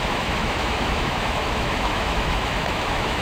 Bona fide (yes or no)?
no